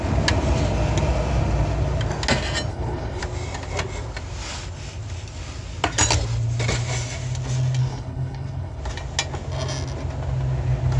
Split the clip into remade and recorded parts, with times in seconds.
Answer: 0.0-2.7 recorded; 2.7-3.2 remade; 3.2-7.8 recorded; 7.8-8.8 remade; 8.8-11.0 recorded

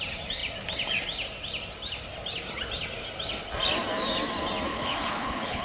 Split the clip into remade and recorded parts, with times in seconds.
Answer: 0.0-4.7 recorded; 4.7-5.6 remade

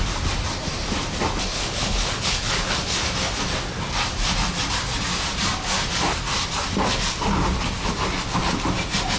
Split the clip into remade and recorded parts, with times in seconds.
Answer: 0.0-1.5 recorded; 1.5-2.8 remade; 2.8-9.2 recorded

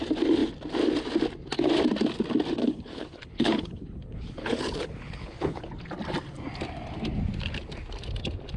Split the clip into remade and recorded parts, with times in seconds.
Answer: 0.0-2.6 recorded; 2.6-5.7 remade; 5.7-8.6 recorded

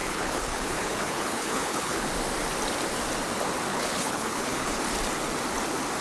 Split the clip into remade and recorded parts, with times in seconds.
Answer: 0.0-2.1 remade; 2.1-3.7 recorded; 3.7-4.8 remade; 4.8-6.0 recorded

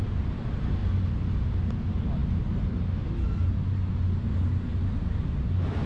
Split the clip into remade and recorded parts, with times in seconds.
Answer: 0.0-5.9 recorded

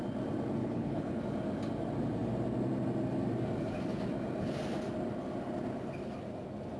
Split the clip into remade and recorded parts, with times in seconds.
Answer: 0.0-0.6 recorded; 0.6-1.2 remade; 1.2-6.8 recorded

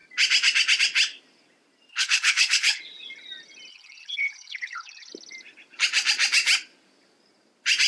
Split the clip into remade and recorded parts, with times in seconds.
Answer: 0.0-1.9 recorded; 1.9-2.8 remade; 2.8-3.7 recorded; 3.7-5.1 remade; 5.1-7.9 recorded